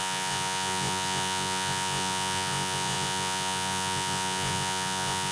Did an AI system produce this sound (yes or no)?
yes